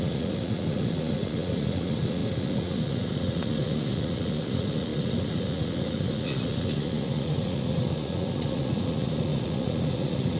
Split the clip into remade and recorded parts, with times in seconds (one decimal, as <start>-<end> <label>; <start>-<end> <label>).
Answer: 0.0-10.4 remade